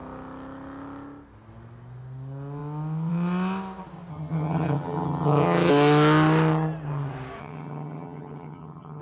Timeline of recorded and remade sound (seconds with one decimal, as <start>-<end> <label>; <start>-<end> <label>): 0.0-4.1 recorded; 4.1-5.7 remade; 5.7-7.4 recorded; 7.4-9.0 remade